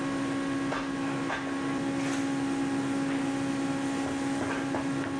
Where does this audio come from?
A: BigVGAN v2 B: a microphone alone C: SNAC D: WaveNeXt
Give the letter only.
B